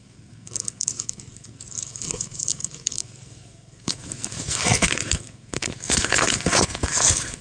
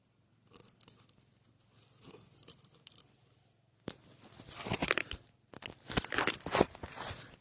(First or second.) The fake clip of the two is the first